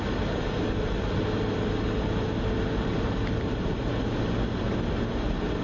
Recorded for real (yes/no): yes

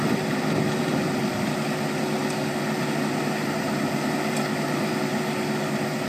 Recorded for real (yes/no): yes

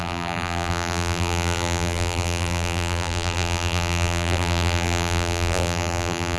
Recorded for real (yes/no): no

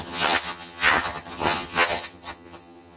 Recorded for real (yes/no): no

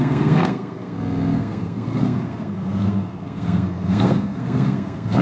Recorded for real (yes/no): no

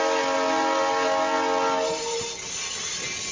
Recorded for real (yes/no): yes